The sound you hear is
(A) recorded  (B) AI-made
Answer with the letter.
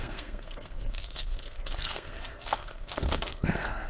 B